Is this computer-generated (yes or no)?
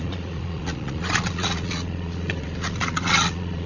yes